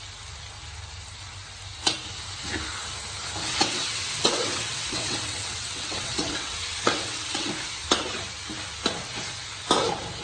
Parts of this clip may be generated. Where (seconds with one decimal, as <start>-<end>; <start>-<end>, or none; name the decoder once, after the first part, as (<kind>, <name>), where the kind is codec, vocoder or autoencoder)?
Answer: 3.4-7.5 (vocoder, WaveNeXt)